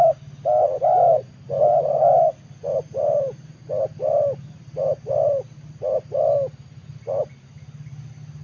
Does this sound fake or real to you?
real